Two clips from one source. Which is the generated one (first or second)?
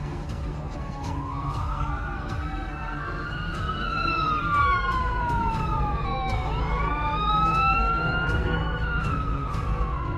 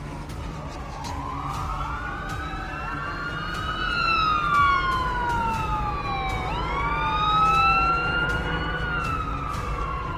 first